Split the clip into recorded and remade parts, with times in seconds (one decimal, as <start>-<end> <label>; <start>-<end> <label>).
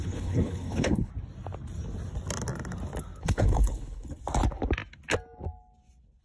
0.0-1.1 remade; 1.1-3.2 recorded; 3.2-4.2 remade; 4.2-6.2 recorded